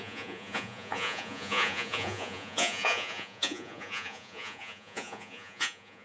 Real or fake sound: fake